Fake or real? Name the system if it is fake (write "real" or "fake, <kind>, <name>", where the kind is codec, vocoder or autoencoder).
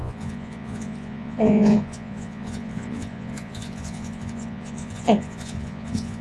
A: fake, vocoder, Vocos